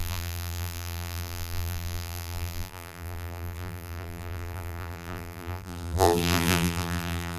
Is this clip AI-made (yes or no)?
yes